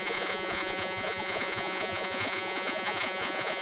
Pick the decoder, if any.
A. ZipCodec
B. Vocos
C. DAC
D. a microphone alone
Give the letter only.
B